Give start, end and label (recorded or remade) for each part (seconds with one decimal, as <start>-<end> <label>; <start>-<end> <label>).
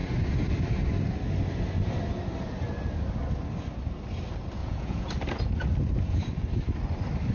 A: 0.0-4.6 recorded; 4.6-5.1 remade; 5.1-7.3 recorded